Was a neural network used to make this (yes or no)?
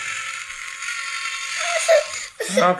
no